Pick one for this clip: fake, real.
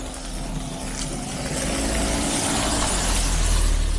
real